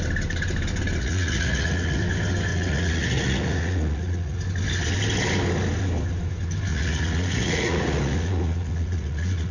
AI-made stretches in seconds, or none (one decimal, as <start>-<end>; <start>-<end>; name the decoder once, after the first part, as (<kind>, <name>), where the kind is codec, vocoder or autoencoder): 1.0-2.0 (vocoder, Vocos); 2.5-4.4; 6.7-9.5